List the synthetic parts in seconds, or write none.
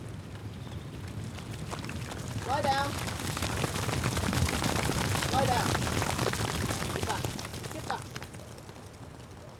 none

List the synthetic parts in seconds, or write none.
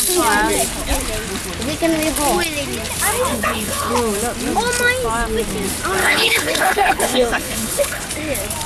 3.3-3.9 (codec, HILCodec); 6.0-8.0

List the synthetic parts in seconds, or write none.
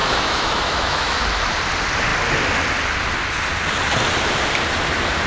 0.0-1.2 (autoencoder, DAC-VAE)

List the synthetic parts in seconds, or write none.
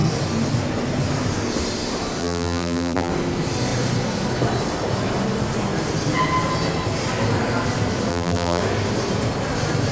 2.2-3.1 (vocoder, BigVGAN v2); 8.1-8.6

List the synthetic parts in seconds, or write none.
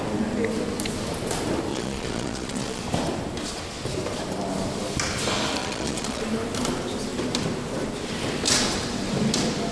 1.7-2.8 (vocoder, Vocos); 5.6-6.2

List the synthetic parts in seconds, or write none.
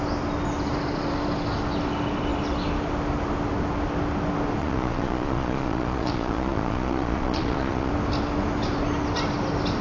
4.6-7.9 (vocoder, Vocos)